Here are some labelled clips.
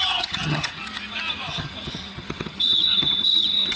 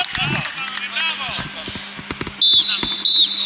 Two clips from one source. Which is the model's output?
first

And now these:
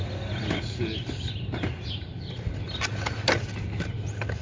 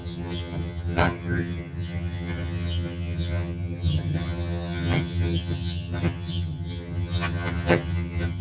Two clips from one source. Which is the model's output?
second